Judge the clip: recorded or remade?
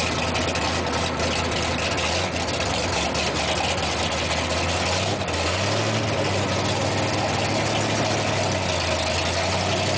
recorded